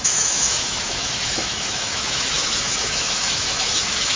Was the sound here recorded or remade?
remade